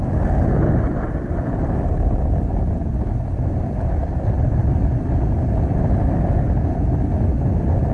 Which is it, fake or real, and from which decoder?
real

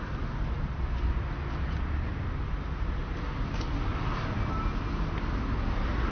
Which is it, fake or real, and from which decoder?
real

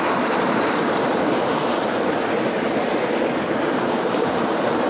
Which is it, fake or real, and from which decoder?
fake, vocoder, BigVGAN v2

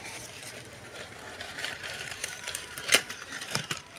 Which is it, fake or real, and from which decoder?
fake, vocoder, BigVGAN v2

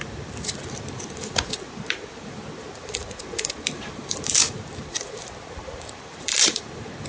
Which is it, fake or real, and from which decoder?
fake, vocoder, BigVGAN v2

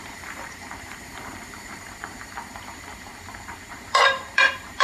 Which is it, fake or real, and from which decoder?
fake, vocoder, BigVGAN v2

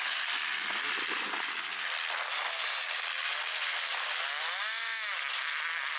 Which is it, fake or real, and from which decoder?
real